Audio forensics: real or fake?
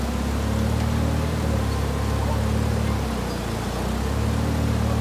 real